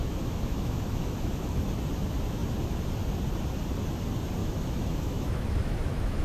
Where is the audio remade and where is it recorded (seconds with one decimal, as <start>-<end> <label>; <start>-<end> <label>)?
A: 0.0-1.6 remade; 1.6-4.4 recorded; 4.4-6.2 remade